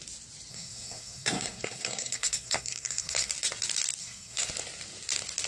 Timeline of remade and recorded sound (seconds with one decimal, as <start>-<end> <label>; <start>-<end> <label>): 0.0-0.5 recorded; 0.5-3.3 remade; 3.3-4.0 recorded; 4.0-4.5 remade; 4.5-5.5 recorded